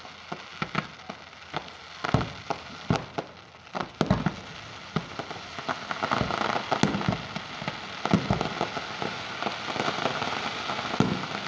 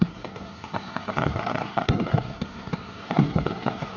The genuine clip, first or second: first